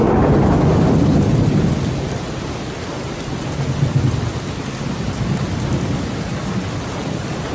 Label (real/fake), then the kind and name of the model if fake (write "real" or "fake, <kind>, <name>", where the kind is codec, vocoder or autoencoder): real